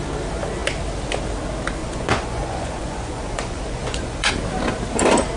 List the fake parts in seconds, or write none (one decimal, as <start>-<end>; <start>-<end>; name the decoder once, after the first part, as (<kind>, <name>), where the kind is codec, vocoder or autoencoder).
1.8-4.3 (vocoder, Vocos)